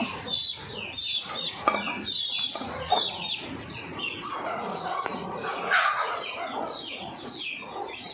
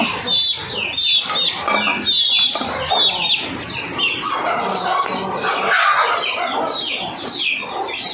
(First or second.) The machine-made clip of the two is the first